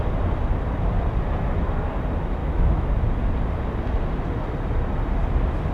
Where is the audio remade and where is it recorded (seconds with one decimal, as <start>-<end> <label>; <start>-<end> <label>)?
0.0-2.4 recorded; 2.4-2.9 remade; 2.9-5.7 recorded